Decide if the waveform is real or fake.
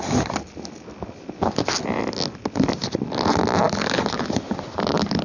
real